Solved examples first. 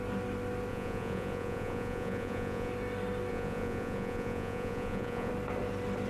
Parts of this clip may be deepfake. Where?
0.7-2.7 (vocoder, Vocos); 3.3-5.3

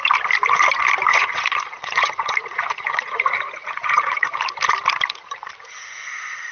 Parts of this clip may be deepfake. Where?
1.1-4.4 (vocoder, Vocos)

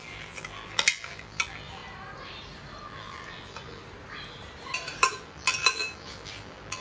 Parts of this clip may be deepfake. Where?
0.0-1.8 (vocoder, BigVGAN v2); 2.8-3.8; 5.1-6.8

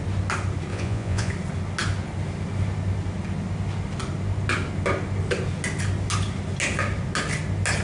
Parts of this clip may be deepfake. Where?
0.7-1.3 (vocoder, Vocos)